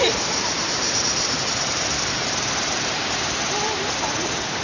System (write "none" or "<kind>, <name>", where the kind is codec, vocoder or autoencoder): vocoder, BigVGAN v2